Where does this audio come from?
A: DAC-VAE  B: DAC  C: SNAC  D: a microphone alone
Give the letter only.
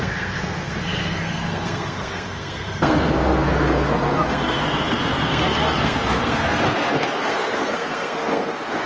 C